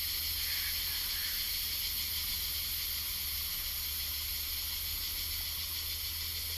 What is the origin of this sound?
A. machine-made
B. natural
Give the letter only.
B